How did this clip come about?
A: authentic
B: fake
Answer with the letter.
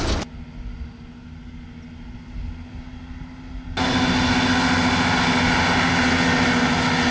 A